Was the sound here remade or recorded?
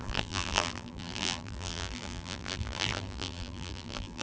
remade